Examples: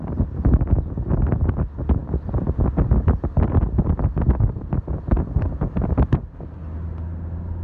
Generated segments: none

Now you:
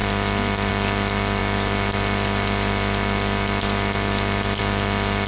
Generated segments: none

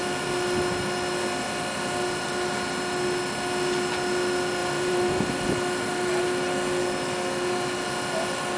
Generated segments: 4.6-5.2 (vocoder, BigVGAN v2)

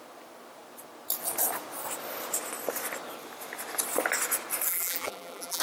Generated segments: 4.7-5.6 (vocoder, BigVGAN v2)

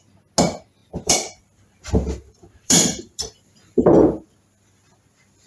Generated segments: 0.8-4.1 (vocoder, BigVGAN v2)

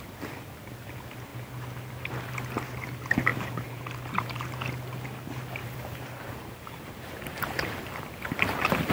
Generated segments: 3.3-4.4 (vocoder, BigVGAN v2); 5.6-8.9

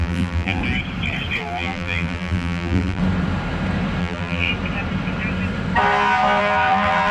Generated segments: 0.0-0.6 (vocoder, BigVGAN v2); 1.4-3.0; 4.0-4.5; 6.4-7.1